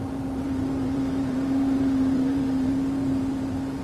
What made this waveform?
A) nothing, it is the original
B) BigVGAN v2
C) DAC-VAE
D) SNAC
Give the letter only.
B